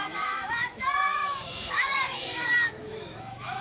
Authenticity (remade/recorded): remade